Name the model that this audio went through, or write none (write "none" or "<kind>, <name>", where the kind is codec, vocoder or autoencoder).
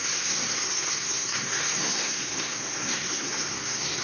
codec, SNAC